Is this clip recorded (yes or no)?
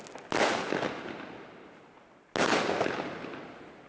yes